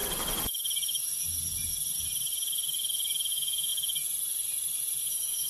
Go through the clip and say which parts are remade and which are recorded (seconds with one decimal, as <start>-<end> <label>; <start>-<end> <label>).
0.0-3.3 recorded; 3.3-3.7 remade; 3.7-5.0 recorded; 5.0-5.5 remade